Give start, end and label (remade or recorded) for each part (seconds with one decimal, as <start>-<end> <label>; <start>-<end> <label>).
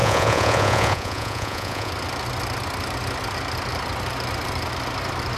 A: 0.0-1.9 remade; 1.9-5.4 recorded